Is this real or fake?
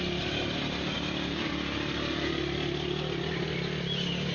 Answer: real